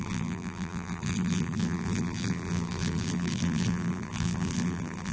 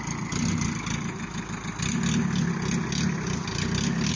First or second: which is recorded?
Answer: second